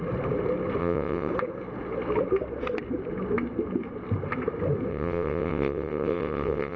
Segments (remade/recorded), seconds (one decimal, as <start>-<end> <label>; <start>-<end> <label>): 0.0-0.8 recorded; 0.8-1.3 remade; 1.3-4.9 recorded; 4.9-6.8 remade